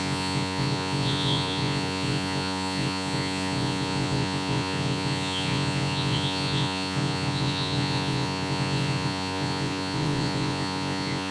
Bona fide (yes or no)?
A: no